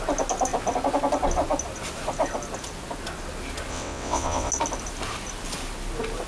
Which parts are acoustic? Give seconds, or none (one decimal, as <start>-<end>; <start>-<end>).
0.0-3.7; 4.5-6.3